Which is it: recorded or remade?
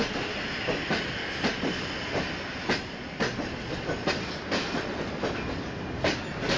recorded